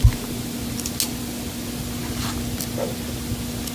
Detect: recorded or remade recorded